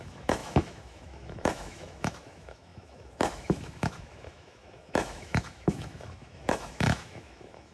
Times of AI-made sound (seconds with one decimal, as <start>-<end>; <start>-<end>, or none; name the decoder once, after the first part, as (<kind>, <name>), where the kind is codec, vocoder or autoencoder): 0.0-7.7 (autoencoder, DAC-VAE)